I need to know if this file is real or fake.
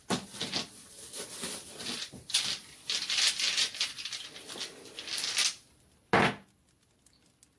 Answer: real